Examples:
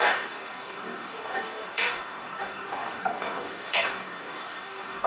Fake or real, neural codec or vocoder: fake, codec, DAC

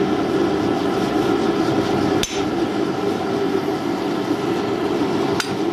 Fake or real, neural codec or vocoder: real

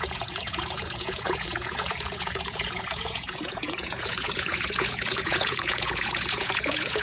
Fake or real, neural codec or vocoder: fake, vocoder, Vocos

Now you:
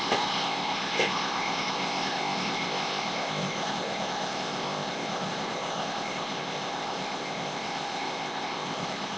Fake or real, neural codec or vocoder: fake, codec, ZipCodec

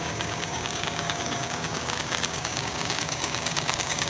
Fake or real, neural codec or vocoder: fake, codec, DAC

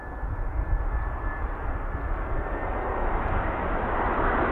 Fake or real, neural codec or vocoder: real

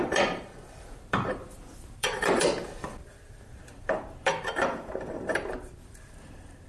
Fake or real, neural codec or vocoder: fake, vocoder, BigVGAN v2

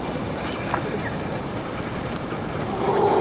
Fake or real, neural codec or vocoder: real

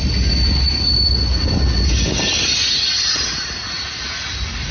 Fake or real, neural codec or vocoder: real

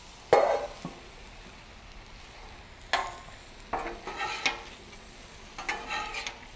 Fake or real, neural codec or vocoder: real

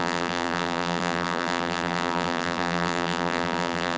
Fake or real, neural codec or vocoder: fake, vocoder, BigVGAN v2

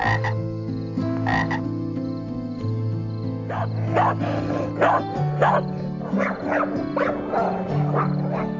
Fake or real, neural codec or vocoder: real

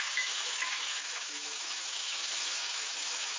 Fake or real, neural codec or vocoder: fake, autoencoder, DAC-VAE